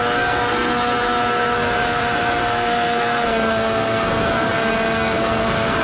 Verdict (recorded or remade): remade